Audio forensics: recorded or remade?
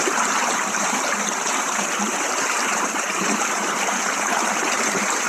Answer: remade